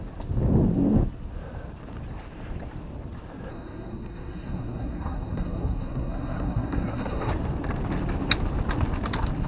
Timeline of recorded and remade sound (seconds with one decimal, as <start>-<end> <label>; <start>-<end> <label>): 0.0-3.5 recorded; 3.5-7.3 remade; 7.3-9.5 recorded

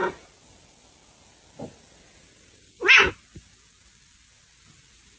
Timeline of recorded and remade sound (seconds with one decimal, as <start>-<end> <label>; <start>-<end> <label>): 0.0-5.2 recorded

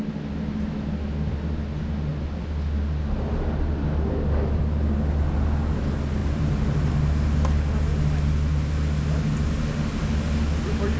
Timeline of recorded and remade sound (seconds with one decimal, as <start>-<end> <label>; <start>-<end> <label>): 0.0-6.2 recorded; 6.2-6.9 remade; 6.9-11.0 recorded